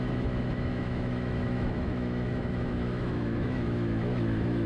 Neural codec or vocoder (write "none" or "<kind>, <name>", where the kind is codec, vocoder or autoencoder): autoencoder, DAC-VAE